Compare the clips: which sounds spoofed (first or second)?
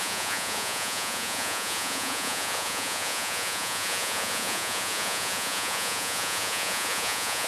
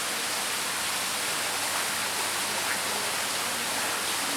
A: first